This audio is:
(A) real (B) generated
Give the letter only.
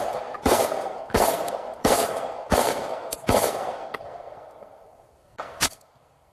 B